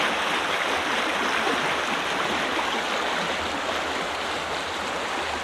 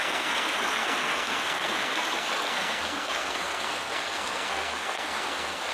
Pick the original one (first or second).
first